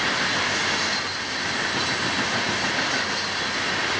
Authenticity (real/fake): real